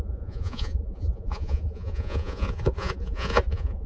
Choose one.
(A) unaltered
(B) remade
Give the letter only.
B